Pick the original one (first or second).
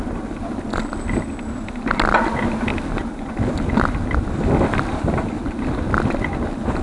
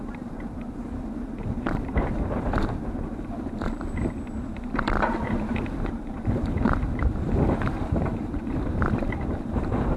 first